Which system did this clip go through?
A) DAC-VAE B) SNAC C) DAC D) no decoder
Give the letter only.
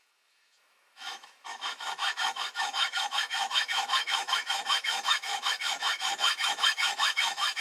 A